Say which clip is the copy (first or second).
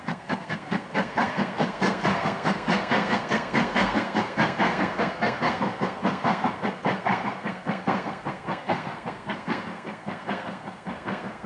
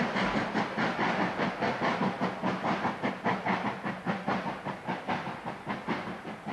first